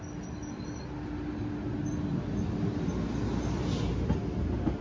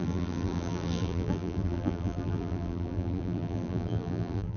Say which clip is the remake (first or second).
second